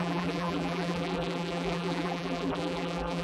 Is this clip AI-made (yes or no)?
yes